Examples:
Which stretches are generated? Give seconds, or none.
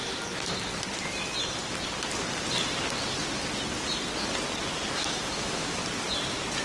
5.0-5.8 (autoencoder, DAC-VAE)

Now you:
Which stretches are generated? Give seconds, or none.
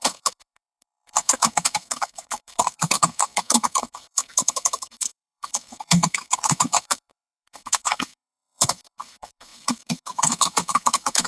0.0-11.3 (codec, SNAC)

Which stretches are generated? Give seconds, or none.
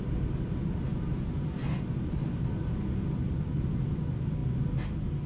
0.0-0.9 (vocoder, BigVGAN v2); 2.1-5.3